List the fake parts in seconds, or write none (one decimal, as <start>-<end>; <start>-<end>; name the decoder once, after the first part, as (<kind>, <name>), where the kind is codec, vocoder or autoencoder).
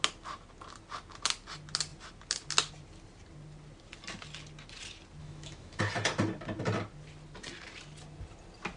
5.2-5.8 (autoencoder, DAC-VAE)